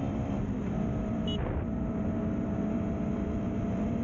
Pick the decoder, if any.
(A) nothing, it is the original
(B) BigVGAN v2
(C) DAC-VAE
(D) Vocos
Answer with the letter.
A